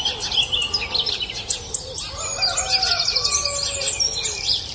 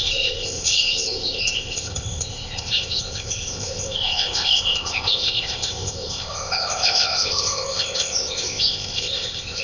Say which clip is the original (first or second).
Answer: first